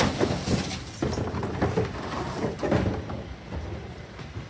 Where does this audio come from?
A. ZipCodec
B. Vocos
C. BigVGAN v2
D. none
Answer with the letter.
D